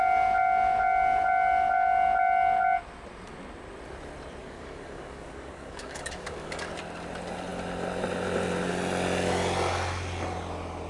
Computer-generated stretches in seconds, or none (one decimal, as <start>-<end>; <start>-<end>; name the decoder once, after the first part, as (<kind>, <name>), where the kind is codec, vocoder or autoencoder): 4.4-6.7 (codec, DAC)